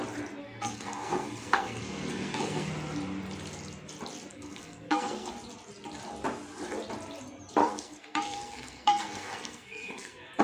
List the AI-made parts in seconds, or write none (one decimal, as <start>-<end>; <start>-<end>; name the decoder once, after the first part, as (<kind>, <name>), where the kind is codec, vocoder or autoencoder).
0.4-2.7 (codec, SNAC); 4.3-5.3; 7.6-10.4